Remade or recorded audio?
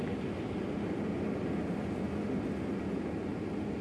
recorded